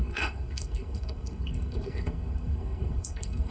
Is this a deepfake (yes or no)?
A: yes